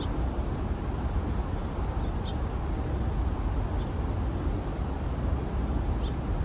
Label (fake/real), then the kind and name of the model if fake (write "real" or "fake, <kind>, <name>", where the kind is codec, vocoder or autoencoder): real